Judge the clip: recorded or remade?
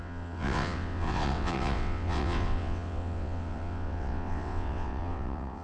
remade